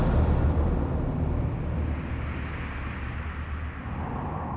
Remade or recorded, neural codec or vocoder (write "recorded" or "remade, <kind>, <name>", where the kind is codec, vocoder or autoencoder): recorded